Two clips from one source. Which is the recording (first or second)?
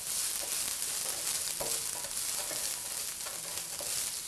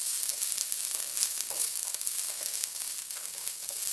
first